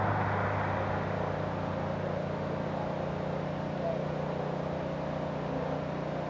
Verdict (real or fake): real